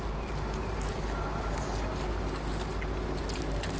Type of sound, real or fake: real